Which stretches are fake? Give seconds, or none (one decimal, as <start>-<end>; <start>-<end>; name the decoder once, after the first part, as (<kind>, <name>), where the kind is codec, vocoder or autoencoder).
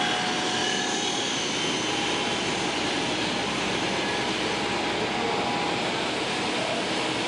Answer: 0.6-5.0 (vocoder, BigVGAN v2)